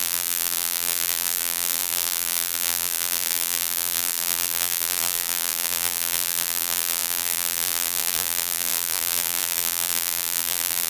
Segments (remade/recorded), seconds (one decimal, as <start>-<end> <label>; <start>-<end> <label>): 0.0-10.9 remade